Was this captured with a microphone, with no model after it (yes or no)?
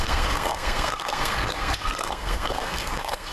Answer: no